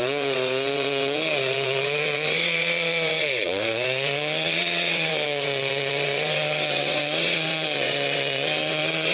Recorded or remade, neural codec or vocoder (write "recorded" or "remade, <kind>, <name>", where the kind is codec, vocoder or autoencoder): remade, vocoder, WaveNeXt